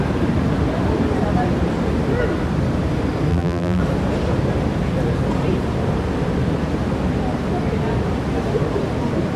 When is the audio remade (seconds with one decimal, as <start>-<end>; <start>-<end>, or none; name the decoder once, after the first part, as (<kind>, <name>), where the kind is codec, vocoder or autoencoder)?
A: 3.3-3.8 (vocoder, BigVGAN v2)